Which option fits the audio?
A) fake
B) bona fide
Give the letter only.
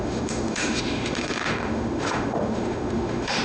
A